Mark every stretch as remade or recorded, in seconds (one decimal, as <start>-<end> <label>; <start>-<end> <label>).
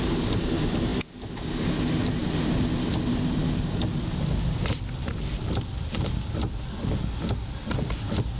0.0-8.4 recorded